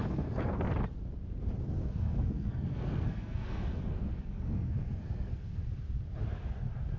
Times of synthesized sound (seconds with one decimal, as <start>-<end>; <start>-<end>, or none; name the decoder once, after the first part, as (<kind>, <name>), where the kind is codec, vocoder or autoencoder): 0.0-0.6 (codec, SNAC); 1.8-5.6